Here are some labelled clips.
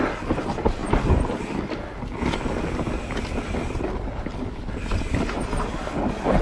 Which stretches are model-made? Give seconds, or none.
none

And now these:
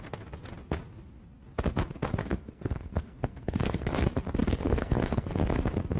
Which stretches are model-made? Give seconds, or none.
2.2-3.9 (codec, SNAC); 4.4-5.3

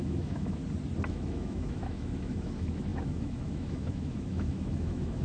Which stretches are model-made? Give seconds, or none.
0.0-0.6 (autoencoder, DAC-VAE); 1.1-5.2